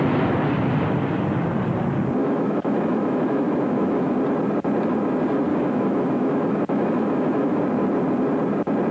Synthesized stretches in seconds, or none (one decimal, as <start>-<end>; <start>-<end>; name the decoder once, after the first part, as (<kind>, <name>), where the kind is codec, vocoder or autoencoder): 2.2-4.1 (autoencoder, DAC-VAE); 5.5-7.6